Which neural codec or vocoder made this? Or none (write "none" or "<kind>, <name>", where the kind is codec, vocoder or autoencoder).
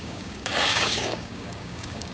codec, DAC